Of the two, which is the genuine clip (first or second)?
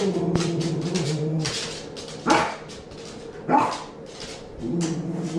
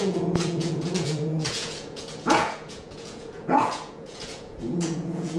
first